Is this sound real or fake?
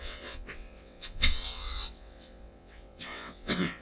fake